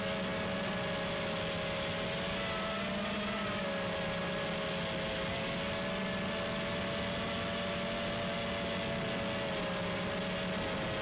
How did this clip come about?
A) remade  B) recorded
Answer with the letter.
B